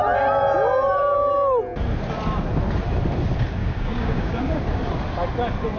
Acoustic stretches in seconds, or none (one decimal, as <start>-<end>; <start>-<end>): 0.0-3.6; 4.4-5.8